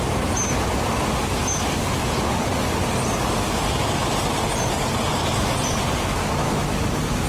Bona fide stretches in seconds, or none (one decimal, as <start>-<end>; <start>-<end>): 0.0-6.1; 6.8-7.3